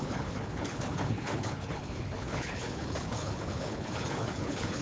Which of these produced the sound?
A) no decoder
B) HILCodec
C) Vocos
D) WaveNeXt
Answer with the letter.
B